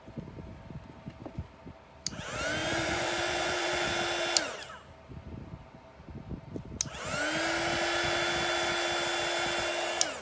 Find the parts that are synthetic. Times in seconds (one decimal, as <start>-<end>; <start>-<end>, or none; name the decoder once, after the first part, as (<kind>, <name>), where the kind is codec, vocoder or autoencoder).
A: 2.6-3.9 (vocoder, Vocos)